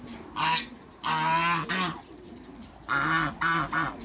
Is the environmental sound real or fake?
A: real